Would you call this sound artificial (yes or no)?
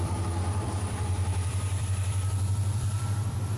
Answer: yes